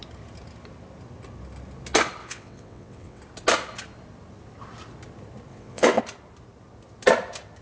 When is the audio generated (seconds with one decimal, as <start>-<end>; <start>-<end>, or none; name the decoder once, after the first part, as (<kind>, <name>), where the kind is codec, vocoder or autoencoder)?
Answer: 2.2-3.2 (vocoder, WaveNeXt); 5.5-6.0